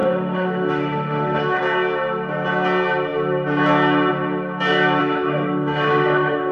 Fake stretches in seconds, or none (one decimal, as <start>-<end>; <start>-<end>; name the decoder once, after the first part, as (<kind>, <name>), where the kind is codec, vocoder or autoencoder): 0.0-1.6 (autoencoder, DAC-VAE); 5.0-6.5